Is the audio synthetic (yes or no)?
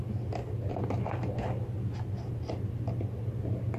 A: no